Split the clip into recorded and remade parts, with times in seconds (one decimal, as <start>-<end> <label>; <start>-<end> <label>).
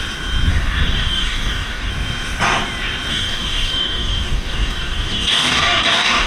0.0-0.5 recorded; 0.5-1.9 remade; 1.9-3.1 recorded; 3.1-6.3 remade